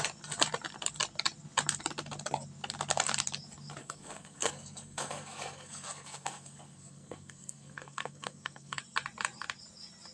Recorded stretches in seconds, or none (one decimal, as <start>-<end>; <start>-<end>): 0.0-3.8; 8.8-10.1